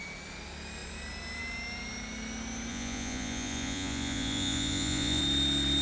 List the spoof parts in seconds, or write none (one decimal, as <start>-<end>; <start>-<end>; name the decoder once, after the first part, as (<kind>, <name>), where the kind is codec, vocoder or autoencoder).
2.7-5.2 (vocoder, Vocos)